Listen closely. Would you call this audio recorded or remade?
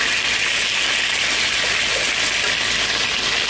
recorded